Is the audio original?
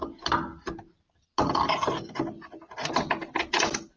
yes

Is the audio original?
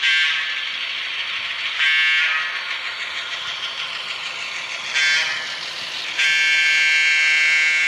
yes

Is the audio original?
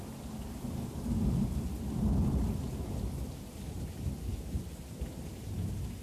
yes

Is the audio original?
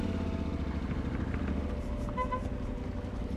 yes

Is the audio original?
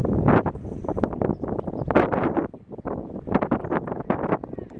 yes